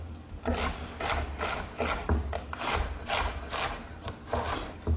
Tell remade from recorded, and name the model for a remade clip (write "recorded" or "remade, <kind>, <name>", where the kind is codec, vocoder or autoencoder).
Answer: recorded